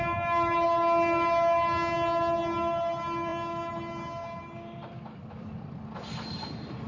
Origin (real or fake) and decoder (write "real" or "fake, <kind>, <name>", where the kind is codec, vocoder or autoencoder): real